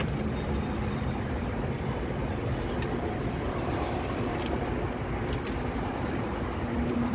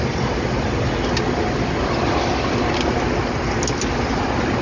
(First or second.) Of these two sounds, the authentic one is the second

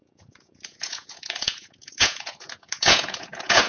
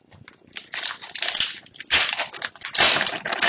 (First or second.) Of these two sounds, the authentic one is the second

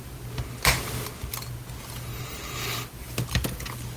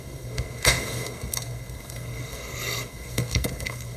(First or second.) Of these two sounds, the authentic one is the first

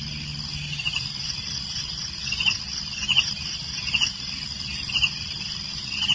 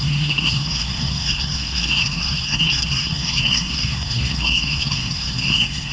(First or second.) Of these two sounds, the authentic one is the first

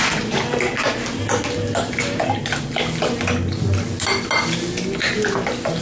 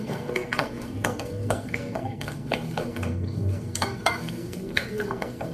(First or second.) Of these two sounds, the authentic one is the first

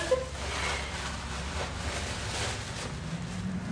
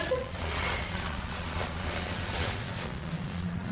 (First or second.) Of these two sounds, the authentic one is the first